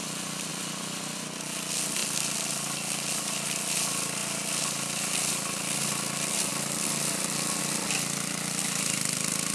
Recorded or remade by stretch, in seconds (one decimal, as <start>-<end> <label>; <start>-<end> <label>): 0.0-9.5 recorded